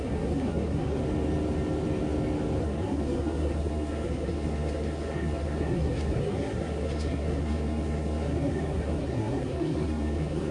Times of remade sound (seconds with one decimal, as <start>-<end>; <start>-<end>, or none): 0.0-1.0; 2.6-10.5